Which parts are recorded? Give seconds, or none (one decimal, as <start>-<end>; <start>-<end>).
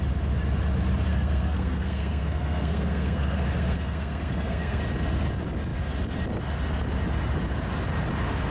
0.0-1.1; 4.8-8.5